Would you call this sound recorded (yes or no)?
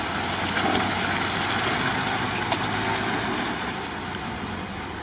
yes